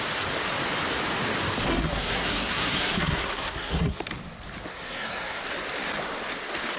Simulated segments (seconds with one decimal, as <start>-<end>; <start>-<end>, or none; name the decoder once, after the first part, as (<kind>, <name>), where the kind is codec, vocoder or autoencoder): 1.7-4.0 (codec, SNAC); 4.7-5.4